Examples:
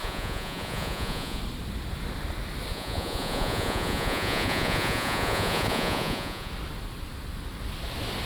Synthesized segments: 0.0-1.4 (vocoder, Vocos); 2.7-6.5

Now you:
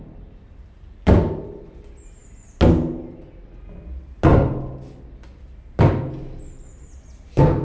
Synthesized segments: none

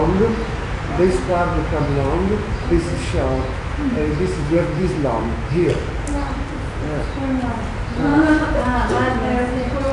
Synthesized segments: 1.3-5.7 (autoencoder, DAC-VAE); 8.1-8.9

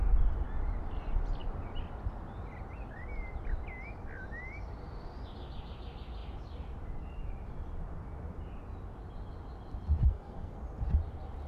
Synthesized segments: 10.0-10.6 (codec, SNAC)

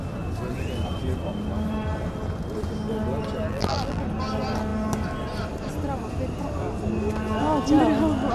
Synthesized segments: 3.5-4.0 (vocoder, BigVGAN v2)

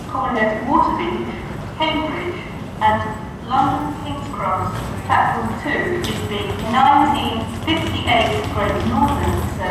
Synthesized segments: 0.0-4.0 (vocoder, BigVGAN v2); 7.4-9.0

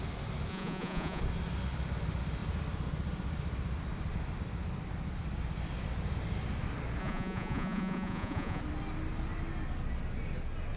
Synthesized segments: 0.5-1.2 (vocoder, Vocos); 7.0-8.6